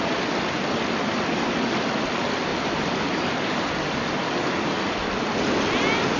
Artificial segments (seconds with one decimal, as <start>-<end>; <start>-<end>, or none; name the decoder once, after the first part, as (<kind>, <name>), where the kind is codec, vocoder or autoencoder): none